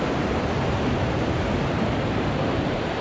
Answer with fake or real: fake